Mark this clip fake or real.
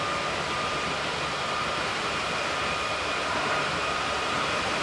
real